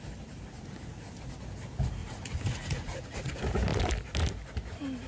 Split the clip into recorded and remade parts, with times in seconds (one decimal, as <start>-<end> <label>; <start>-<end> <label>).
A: 0.0-2.0 recorded; 2.0-3.3 remade; 3.3-5.1 recorded